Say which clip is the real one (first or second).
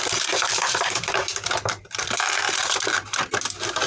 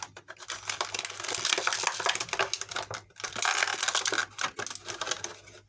second